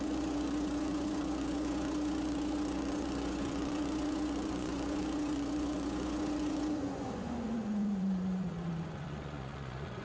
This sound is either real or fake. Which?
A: fake